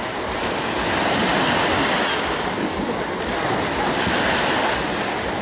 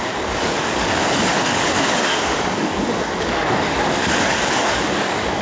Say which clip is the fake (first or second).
second